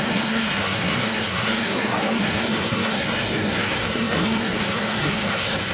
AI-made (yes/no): yes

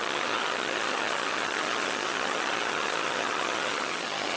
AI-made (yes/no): yes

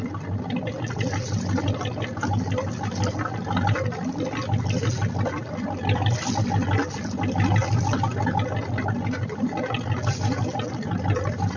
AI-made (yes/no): no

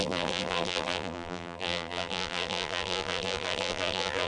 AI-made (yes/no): yes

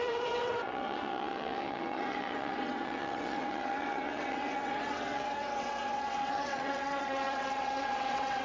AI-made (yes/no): yes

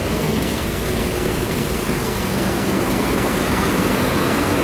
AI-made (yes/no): yes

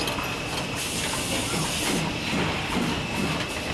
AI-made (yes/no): no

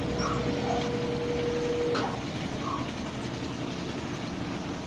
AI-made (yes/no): no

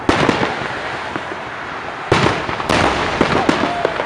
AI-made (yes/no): no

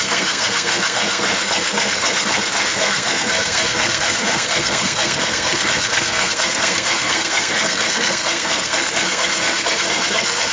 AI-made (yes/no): yes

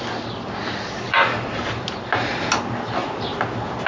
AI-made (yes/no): no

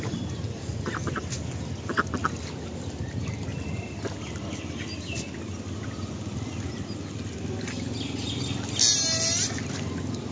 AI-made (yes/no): no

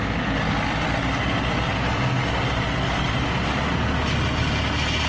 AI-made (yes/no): no